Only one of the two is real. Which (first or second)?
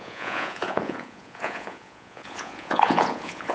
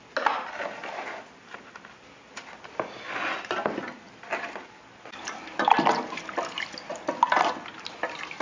second